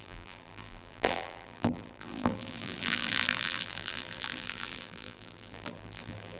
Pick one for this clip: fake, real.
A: fake